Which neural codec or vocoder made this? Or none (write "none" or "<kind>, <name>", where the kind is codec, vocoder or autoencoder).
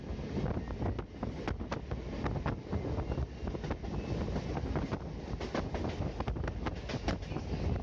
none